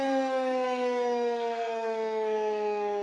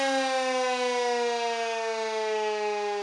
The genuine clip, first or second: second